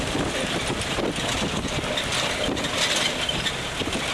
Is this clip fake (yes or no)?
yes